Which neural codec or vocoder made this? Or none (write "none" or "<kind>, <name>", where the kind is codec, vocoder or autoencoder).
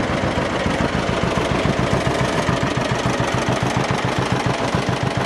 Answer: none